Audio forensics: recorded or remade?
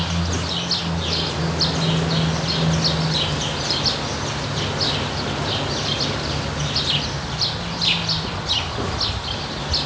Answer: recorded